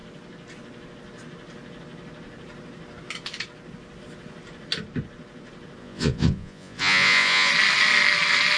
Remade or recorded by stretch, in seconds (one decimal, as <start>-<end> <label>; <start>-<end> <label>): 0.0-5.8 recorded; 5.8-7.5 remade; 7.5-8.6 recorded